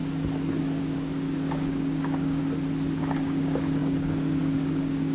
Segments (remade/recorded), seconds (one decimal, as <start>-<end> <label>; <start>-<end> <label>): 0.0-0.8 recorded; 0.8-2.4 remade; 2.4-3.0 recorded; 3.0-5.1 remade